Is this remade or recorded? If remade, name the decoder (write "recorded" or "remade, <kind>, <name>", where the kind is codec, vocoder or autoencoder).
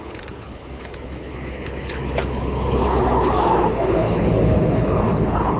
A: remade, codec, HILCodec